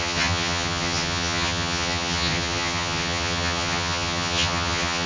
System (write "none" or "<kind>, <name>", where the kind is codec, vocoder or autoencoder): vocoder, HiFi-GAN